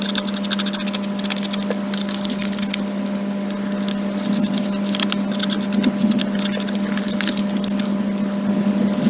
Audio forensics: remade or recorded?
recorded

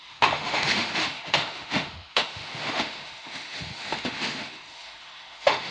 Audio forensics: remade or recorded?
remade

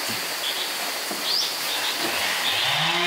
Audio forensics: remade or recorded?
recorded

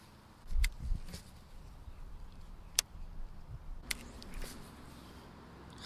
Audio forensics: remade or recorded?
recorded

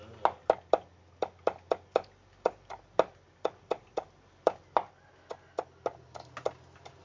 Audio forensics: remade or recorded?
recorded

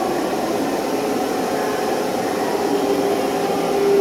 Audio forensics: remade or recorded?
recorded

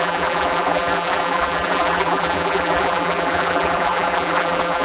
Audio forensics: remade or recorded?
remade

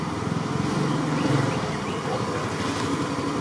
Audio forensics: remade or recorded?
recorded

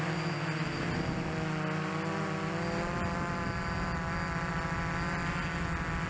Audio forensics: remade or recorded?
recorded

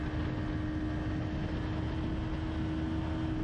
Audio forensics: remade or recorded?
recorded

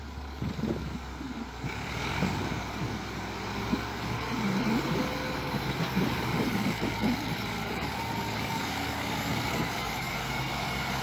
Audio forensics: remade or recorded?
remade